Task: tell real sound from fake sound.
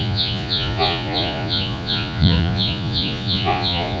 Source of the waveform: fake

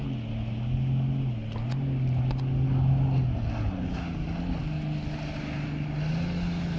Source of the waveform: real